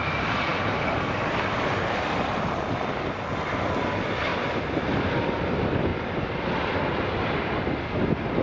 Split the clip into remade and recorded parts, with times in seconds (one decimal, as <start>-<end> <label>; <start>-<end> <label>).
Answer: 0.0-8.4 recorded